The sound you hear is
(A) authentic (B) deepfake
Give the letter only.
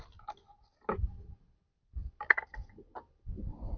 A